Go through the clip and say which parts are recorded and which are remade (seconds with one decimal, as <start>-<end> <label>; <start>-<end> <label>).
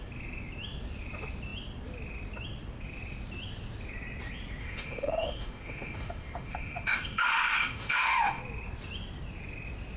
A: 0.0-4.6 recorded; 4.6-8.4 remade; 8.4-10.0 recorded